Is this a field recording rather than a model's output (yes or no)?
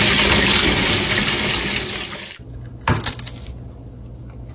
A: yes